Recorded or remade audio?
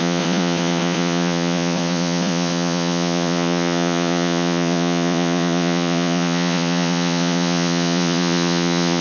remade